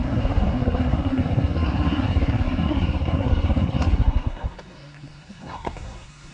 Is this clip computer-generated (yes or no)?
yes